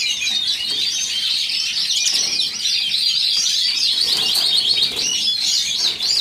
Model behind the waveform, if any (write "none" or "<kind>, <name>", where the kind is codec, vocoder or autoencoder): none